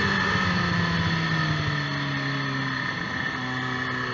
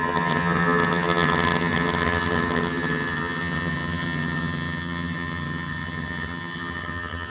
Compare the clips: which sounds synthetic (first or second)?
second